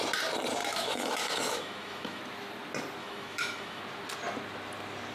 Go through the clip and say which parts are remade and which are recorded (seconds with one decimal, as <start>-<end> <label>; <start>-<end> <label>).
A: 0.0-0.6 recorded; 0.6-2.2 remade; 2.2-3.0 recorded; 3.0-3.8 remade; 3.8-5.1 recorded